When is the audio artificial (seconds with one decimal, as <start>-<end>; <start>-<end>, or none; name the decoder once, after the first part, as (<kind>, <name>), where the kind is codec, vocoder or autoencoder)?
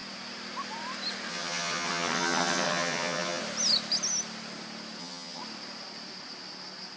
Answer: 1.3-3.4 (vocoder, HiFi-GAN); 5.0-5.4